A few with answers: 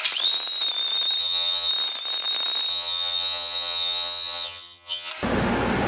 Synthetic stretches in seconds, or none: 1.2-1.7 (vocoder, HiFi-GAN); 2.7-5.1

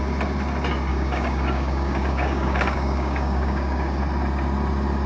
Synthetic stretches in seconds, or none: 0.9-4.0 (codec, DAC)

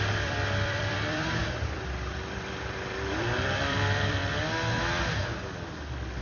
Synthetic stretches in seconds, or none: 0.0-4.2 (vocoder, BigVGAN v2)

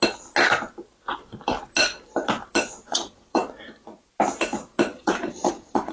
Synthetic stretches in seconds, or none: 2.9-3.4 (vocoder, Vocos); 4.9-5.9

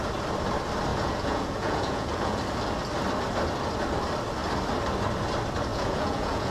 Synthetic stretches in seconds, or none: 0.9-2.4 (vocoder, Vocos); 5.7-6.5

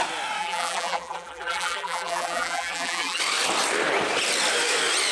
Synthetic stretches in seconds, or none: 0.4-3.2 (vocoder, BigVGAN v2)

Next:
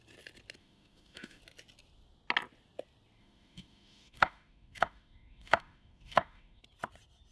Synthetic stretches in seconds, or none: 0.6-1.4 (autoencoder, DAC-VAE); 3.2-6.6